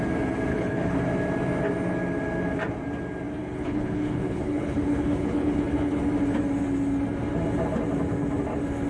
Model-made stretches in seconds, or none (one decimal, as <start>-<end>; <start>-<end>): 0.5-1.0; 3.4-6.0